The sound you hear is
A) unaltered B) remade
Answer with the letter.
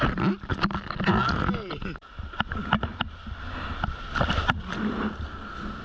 A